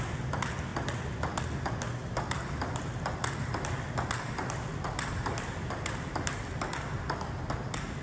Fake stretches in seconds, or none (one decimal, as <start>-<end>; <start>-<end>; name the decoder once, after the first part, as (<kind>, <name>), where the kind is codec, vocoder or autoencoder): 0.7-1.4 (vocoder, BigVGAN v2); 2.0-6.8